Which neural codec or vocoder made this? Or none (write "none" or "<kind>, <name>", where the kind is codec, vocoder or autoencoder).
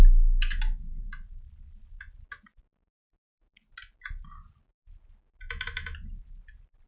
none